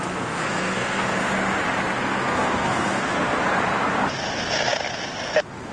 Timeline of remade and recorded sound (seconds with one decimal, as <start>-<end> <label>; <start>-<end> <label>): 0.0-0.4 recorded; 0.4-1.2 remade; 1.2-2.0 recorded; 2.0-3.4 remade; 3.4-5.7 recorded